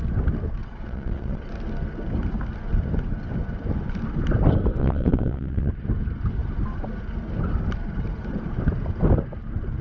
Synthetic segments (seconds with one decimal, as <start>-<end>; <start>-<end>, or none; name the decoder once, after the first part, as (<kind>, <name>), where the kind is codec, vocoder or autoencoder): 0.6-1.5 (vocoder, WaveNeXt); 4.8-5.7